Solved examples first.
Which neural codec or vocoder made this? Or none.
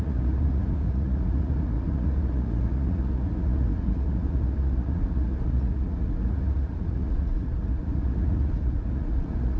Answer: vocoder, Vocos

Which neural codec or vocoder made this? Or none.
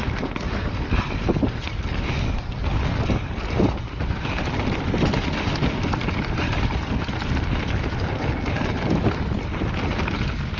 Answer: none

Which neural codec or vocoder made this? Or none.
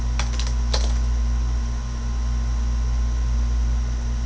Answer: none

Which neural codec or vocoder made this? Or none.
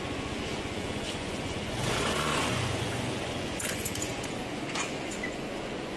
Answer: vocoder, Vocos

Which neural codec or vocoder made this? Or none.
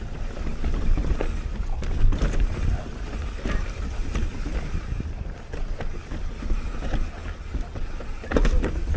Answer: none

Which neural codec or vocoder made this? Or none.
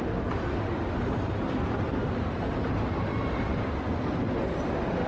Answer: none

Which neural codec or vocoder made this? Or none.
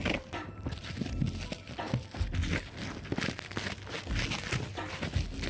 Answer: none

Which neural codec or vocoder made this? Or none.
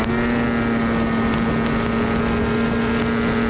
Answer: none